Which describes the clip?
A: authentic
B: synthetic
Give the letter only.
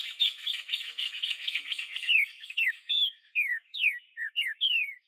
B